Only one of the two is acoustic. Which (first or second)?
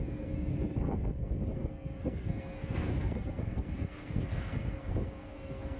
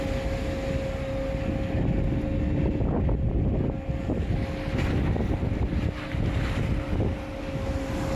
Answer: second